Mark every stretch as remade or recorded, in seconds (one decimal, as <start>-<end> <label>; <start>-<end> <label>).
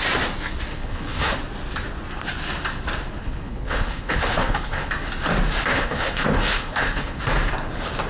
0.0-0.7 recorded; 0.7-1.3 remade; 1.3-3.2 recorded; 3.2-4.9 remade; 4.9-5.7 recorded; 5.7-7.2 remade; 7.2-8.1 recorded